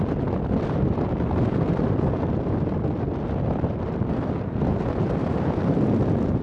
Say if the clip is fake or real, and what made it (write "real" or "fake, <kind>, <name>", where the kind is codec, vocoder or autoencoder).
real